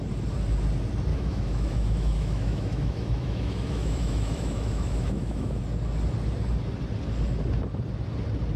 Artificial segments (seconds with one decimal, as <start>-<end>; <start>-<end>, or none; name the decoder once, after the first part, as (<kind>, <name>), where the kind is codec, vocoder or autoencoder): 1.1-5.6 (autoencoder, DAC-VAE)